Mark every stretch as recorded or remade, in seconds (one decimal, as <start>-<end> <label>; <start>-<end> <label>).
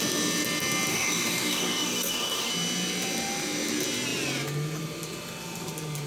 0.0-0.9 recorded; 0.9-2.5 remade; 2.5-6.1 recorded